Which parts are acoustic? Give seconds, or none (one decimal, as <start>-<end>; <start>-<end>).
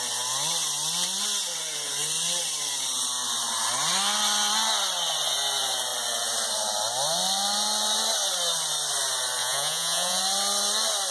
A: 0.0-9.4; 10.2-11.1